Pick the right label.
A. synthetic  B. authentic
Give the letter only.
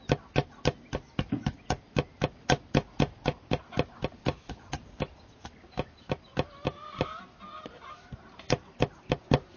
B